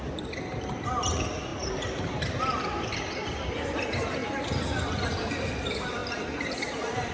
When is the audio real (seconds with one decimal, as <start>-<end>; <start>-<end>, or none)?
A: none